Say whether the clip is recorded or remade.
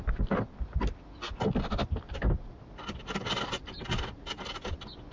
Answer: recorded